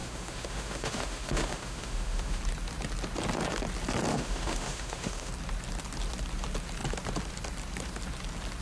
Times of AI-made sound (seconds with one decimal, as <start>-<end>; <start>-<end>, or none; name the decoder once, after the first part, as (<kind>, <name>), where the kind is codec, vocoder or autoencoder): 0.0-2.4 (autoencoder, DAC-VAE); 4.1-5.3